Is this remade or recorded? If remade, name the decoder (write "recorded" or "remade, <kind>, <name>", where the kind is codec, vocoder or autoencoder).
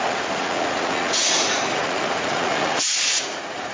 remade, vocoder, Vocos